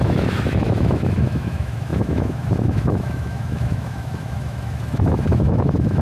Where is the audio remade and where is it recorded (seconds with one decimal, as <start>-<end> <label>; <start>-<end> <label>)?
0.0-6.0 remade